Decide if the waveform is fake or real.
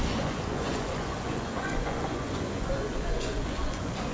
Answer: fake